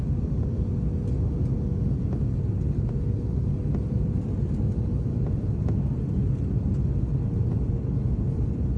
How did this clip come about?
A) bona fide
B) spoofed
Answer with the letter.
A